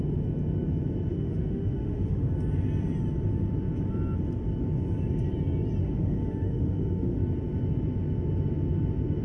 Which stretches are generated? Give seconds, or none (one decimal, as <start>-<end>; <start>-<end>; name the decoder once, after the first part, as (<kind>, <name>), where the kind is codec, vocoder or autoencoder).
1.1-2.3 (autoencoder, DAC-VAE); 5.8-7.2